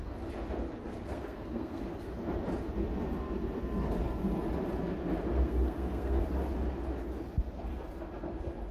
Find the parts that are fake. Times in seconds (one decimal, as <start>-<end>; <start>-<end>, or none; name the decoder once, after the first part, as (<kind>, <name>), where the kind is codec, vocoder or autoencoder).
0.8-1.8 (codec, SNAC); 5.3-6.2